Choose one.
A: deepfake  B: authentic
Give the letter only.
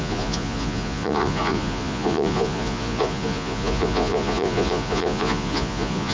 A